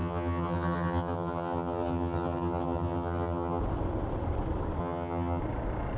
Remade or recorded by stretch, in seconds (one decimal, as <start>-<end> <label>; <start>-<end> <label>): 0.0-3.6 remade; 3.6-4.8 recorded; 4.8-5.4 remade; 5.4-6.0 recorded